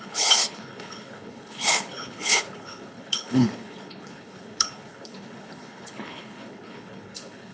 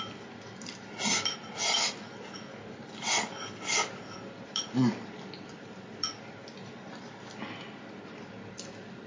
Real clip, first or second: second